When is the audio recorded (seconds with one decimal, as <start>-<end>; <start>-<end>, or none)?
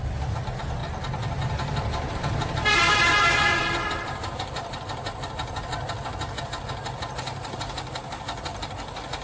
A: 0.0-9.2